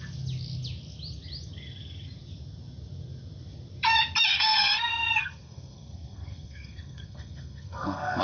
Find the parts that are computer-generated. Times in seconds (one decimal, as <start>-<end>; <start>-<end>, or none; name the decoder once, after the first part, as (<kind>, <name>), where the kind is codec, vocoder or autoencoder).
4.3-8.2 (codec, SNAC)

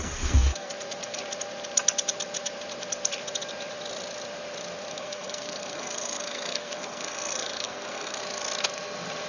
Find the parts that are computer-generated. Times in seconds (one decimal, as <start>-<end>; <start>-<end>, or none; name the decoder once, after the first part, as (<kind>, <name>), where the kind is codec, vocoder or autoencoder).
0.0-0.7 (codec, SNAC); 5.0-8.2

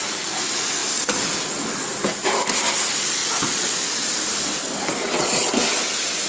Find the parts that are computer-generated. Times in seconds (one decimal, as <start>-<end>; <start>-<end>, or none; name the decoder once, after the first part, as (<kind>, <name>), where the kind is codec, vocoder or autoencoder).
3.2-3.8 (vocoder, Vocos); 5.0-5.5

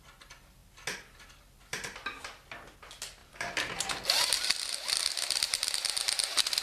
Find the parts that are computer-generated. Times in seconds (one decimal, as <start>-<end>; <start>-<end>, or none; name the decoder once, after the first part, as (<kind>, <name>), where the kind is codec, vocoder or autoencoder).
3.2-4.4 (vocoder, BigVGAN v2)

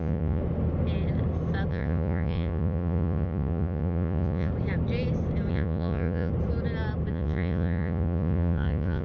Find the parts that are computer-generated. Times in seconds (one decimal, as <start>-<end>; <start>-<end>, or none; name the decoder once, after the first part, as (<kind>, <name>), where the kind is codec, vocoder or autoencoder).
0.0-0.4 (vocoder, Vocos); 1.7-4.5; 5.5-6.3; 7.1-9.0

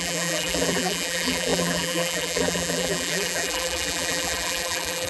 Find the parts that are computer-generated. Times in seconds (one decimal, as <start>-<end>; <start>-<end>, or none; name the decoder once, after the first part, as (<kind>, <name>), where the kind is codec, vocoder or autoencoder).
0.0-5.1 (vocoder, BigVGAN v2)